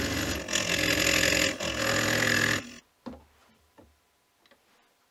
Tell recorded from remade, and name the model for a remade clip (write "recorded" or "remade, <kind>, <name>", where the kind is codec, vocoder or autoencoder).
recorded